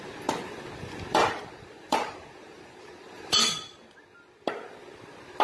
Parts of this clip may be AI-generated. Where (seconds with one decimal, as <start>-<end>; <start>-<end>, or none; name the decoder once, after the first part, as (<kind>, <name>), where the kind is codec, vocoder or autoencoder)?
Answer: 1.1-3.4 (vocoder, BigVGAN v2)